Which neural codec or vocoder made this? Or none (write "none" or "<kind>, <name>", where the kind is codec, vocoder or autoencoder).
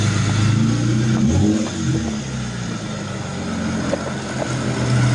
none